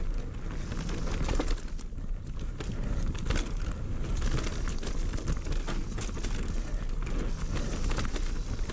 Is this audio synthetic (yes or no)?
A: no